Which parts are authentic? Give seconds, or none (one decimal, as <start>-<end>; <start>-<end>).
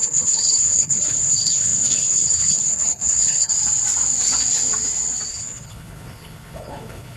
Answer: 3.5-5.3